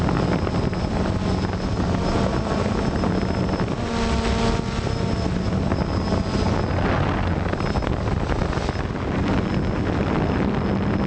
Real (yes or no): yes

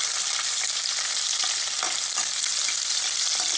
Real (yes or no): yes